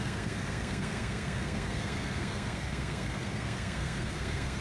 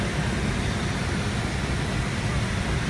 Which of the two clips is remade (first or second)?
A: first